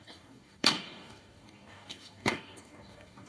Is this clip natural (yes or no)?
no